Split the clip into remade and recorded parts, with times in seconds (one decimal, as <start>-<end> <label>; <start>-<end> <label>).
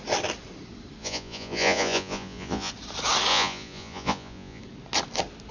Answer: 0.0-1.0 recorded; 1.0-2.7 remade; 2.7-3.3 recorded; 3.3-4.6 remade; 4.6-5.5 recorded